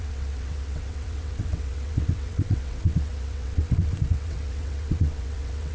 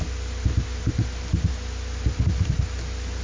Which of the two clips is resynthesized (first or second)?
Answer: first